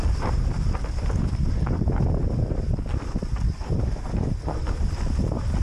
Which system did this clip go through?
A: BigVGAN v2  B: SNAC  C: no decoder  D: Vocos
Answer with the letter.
C